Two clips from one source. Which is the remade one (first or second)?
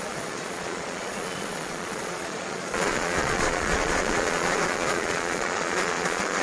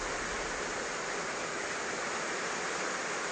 first